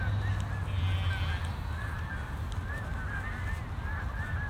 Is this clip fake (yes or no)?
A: no